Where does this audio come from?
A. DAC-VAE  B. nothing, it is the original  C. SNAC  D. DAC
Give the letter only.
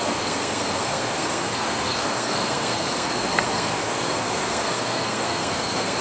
C